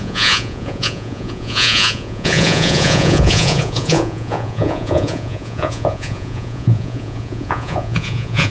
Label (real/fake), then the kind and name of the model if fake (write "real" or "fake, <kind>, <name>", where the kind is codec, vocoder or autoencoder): fake, vocoder, Vocos